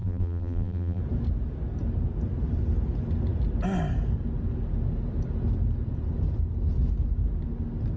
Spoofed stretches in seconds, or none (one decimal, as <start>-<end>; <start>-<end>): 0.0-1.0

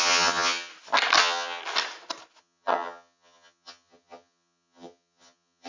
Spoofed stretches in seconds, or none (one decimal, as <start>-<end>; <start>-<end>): 0.0-0.7; 1.2-1.6; 2.4-5.7

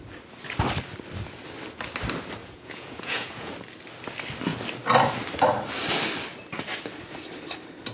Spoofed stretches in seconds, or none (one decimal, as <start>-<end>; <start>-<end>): 2.4-3.5